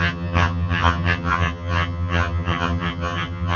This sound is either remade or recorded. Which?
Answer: remade